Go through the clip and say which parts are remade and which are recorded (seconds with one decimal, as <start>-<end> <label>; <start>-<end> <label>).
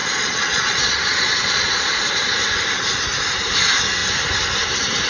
0.0-2.0 remade; 2.0-5.1 recorded